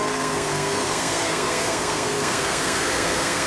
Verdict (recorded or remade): remade